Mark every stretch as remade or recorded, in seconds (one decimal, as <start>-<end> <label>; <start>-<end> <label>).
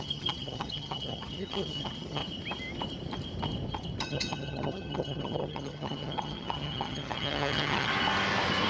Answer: 0.0-2.2 remade; 2.2-4.0 recorded; 4.0-7.9 remade; 7.9-8.7 recorded